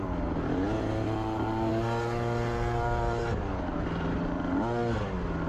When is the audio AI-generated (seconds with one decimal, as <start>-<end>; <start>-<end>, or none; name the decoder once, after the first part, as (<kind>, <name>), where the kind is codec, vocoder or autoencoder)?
none

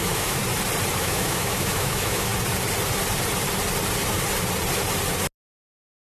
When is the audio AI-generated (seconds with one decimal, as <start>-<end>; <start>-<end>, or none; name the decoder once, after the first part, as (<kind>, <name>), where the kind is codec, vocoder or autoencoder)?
0.0-0.4 (autoencoder, DAC-VAE); 1.0-2.3